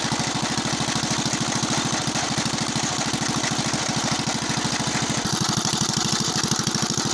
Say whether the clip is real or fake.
real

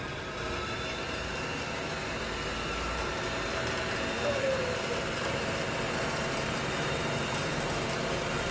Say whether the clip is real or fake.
fake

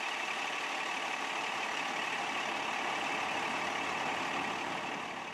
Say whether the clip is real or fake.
real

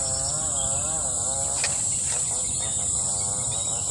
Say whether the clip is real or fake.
real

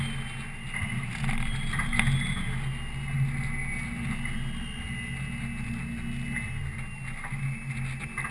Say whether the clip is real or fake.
real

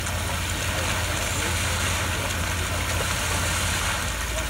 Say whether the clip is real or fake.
real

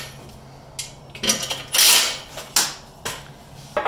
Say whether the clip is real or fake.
real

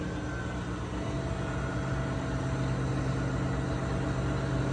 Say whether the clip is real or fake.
real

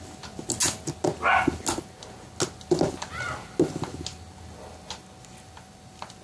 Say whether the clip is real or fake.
real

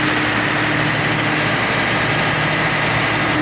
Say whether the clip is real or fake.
real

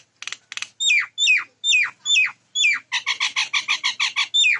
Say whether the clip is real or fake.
real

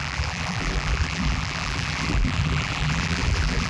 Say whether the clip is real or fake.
fake